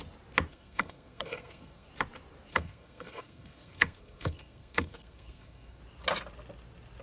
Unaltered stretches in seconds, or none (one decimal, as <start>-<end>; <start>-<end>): 0.0-0.5; 1.9-2.5; 5.8-7.0